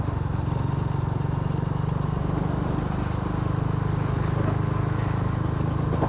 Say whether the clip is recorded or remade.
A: recorded